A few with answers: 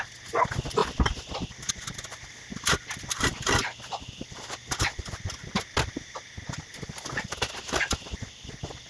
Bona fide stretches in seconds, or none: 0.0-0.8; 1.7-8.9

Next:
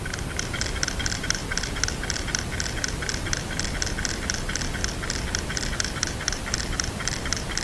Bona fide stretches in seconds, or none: 1.4-2.9; 4.8-5.4

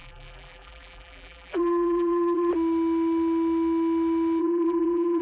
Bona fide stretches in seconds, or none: 2.5-4.4

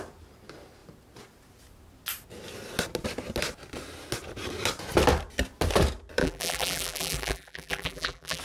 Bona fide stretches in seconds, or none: 0.0-6.2

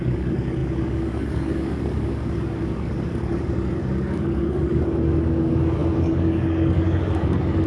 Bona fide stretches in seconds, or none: none

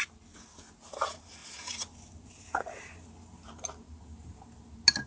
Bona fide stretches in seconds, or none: 0.0-5.1

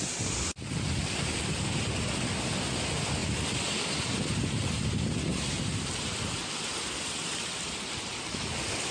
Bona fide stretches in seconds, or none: 0.0-8.9